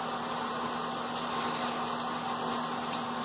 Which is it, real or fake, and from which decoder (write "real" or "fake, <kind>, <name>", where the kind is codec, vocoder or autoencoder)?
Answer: real